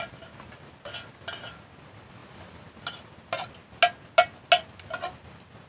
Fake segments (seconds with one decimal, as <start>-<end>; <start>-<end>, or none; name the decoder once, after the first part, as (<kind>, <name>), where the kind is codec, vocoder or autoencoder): none